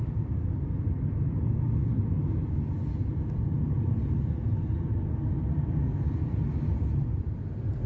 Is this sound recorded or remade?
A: recorded